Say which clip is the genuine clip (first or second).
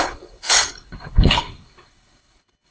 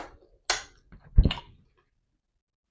second